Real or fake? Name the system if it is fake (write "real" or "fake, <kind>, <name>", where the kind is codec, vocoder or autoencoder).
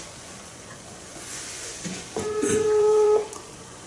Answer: fake, vocoder, Vocos